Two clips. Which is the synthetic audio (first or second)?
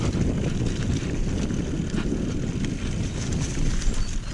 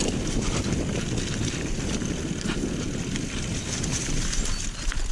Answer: second